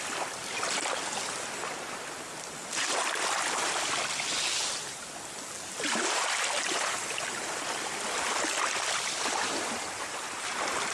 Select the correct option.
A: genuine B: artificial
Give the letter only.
A